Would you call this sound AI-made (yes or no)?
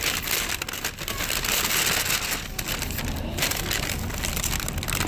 no